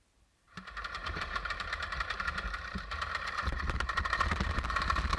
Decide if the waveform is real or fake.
fake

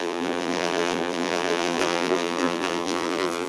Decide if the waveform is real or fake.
fake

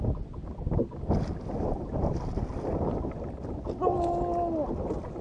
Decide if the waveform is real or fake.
real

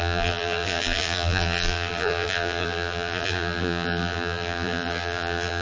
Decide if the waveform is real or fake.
fake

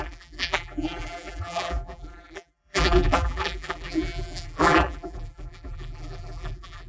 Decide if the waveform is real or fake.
fake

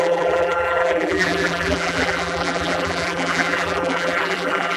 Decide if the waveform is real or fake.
fake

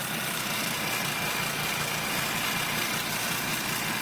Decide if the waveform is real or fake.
real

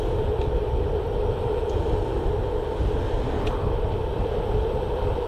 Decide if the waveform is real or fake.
real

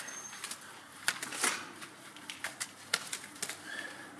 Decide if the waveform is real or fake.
real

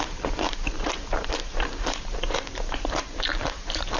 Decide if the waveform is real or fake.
fake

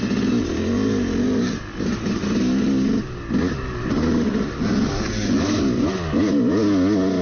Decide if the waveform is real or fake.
real